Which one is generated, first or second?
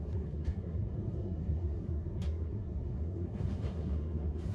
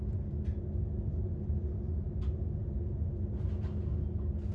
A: first